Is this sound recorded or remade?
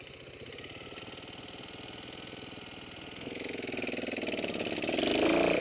recorded